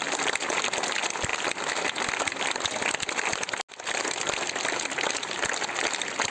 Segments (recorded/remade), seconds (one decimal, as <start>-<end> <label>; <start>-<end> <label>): 0.0-6.3 recorded